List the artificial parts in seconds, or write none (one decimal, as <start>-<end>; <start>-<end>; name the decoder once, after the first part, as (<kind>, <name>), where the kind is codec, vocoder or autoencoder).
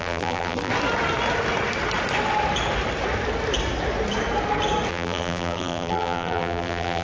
0.0-0.7 (vocoder, BigVGAN v2); 4.9-7.0